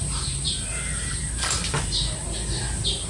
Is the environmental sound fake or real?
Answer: fake